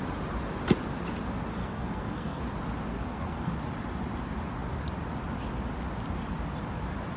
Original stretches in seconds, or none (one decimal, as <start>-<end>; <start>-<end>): 0.0-1.6; 2.4-2.9; 3.5-7.2